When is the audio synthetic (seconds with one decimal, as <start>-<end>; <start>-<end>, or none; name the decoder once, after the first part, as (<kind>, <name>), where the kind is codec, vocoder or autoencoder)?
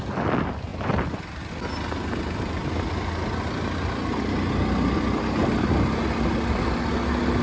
none